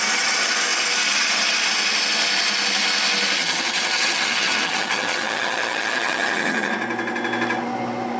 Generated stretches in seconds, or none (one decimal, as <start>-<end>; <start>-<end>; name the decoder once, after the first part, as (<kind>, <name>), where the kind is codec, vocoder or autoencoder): 3.4-6.7 (vocoder, HiFi-GAN)

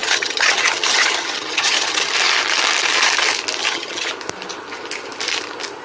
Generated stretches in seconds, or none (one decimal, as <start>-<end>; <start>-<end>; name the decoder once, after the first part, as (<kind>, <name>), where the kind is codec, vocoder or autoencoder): 0.0-2.1 (vocoder, HiFi-GAN); 3.6-4.1

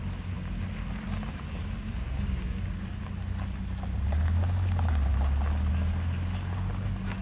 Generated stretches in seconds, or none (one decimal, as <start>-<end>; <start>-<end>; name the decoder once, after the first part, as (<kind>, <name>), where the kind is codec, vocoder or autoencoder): none

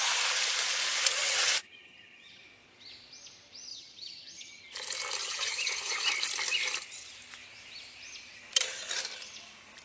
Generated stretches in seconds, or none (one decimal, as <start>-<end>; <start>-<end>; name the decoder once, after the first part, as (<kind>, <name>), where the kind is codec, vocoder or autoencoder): 1.1-2.4 (vocoder, HiFi-GAN); 3.7-4.6; 5.2-6.1

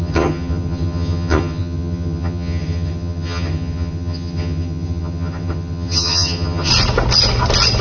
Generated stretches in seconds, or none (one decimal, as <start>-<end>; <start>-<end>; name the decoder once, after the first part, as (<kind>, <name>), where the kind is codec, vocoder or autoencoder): 0.0-6.7 (vocoder, HiFi-GAN)